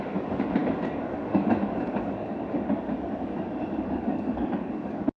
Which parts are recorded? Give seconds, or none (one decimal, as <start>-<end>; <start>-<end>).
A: none